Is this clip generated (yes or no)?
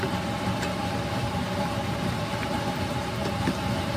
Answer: no